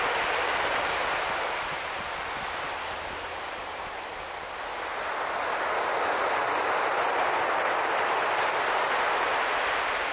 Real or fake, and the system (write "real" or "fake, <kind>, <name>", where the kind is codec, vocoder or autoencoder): real